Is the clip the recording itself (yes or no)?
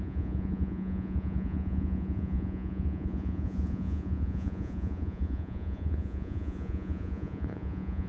no